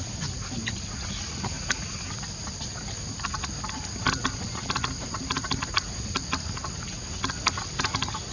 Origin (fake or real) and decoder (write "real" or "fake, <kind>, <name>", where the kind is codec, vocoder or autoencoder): real